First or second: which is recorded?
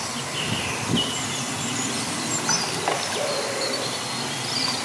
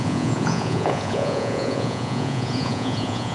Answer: first